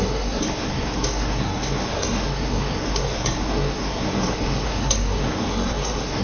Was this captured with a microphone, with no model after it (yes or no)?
no